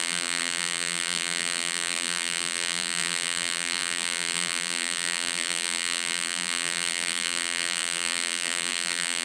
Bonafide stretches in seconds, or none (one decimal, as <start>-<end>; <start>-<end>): none